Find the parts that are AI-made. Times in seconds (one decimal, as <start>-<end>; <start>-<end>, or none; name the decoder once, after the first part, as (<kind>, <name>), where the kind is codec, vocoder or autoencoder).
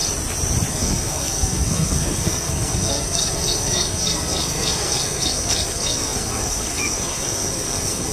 0.7-8.1 (codec, SNAC)